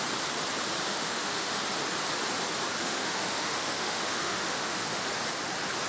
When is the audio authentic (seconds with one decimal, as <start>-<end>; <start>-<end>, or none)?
0.0-0.9; 1.6-2.8; 5.0-5.9